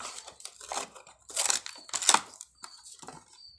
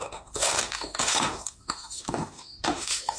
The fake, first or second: second